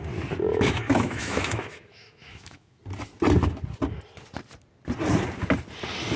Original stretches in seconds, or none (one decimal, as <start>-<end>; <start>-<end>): 0.0-0.5; 2.8-6.2